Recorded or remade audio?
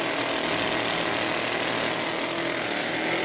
recorded